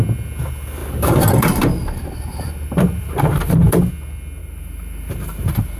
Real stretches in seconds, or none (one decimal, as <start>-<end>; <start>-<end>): 0.0-0.8; 3.9-4.4